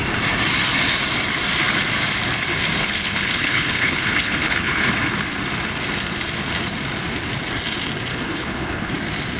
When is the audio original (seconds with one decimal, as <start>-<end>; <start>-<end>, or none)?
0.0-2.8; 4.9-8.1; 8.9-9.4